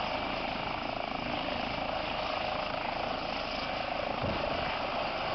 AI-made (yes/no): no